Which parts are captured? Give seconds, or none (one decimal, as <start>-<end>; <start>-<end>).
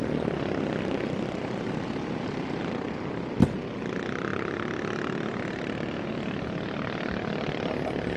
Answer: 0.0-8.2